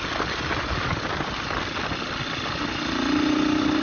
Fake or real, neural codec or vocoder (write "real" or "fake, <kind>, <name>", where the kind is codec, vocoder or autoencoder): real